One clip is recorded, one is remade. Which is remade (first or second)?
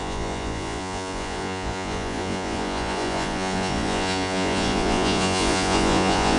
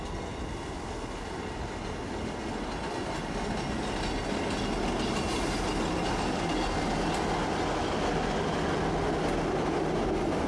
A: first